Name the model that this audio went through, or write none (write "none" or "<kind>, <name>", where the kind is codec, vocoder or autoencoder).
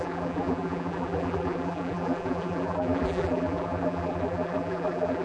vocoder, BigVGAN v2